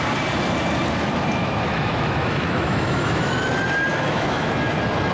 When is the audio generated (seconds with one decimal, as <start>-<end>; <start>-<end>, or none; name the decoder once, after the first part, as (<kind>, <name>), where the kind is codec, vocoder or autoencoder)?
1.4-3.3 (autoencoder, DAC-VAE); 3.9-4.5